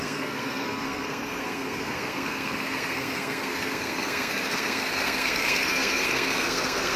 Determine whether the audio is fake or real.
fake